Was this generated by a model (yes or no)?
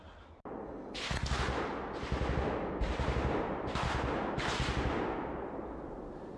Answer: no